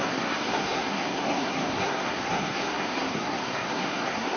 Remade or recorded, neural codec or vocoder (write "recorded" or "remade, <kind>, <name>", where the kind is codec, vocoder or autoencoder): remade, codec, SNAC